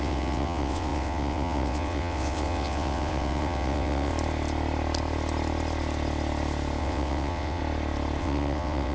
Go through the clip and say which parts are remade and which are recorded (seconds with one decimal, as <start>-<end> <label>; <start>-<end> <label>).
0.0-4.1 remade; 4.1-6.8 recorded; 6.8-7.6 remade; 7.6-8.2 recorded; 8.2-8.9 remade